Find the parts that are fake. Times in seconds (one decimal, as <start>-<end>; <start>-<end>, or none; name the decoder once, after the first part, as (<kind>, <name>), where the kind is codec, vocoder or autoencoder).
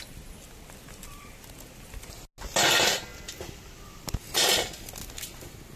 none